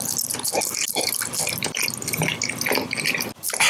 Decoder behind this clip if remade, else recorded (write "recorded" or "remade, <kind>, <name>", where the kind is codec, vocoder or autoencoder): recorded